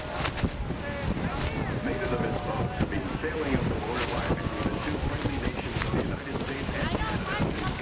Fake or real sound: real